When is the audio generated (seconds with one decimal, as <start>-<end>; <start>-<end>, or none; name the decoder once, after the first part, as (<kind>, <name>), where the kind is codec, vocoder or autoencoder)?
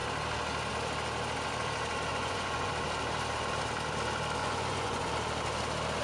2.1-2.7 (vocoder, Vocos); 4.4-5.1